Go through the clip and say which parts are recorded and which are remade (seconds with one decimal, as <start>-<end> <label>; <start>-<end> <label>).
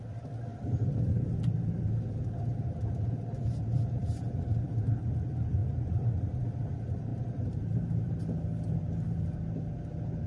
0.0-0.5 recorded; 0.5-5.0 remade; 5.0-5.6 recorded; 5.6-6.4 remade; 6.4-7.1 recorded; 7.1-8.1 remade; 8.1-10.3 recorded